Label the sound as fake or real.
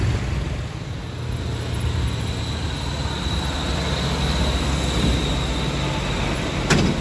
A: real